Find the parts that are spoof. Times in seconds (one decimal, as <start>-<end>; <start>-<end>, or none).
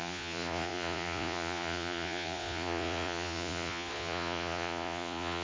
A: 0.0-5.4